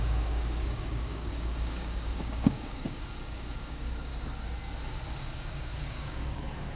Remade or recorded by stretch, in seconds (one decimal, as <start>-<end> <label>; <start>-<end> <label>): 0.0-4.1 remade; 4.1-5.1 recorded; 5.1-6.8 remade